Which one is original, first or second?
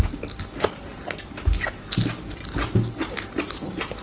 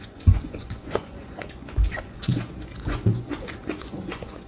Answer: first